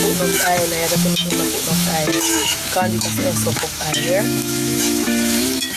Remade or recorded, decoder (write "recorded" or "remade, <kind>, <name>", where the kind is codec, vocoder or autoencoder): remade, autoencoder, DAC-VAE